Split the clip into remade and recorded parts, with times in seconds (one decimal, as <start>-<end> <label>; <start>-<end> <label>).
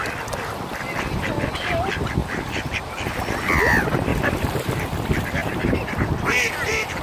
0.0-4.1 recorded; 4.1-4.7 remade; 4.7-5.4 recorded; 5.4-6.1 remade; 6.1-7.0 recorded